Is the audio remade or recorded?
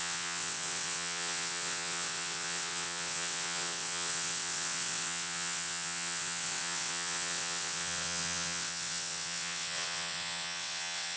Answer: remade